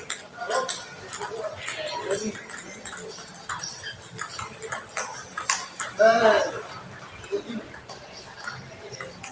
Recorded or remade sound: recorded